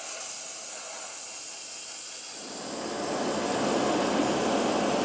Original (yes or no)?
yes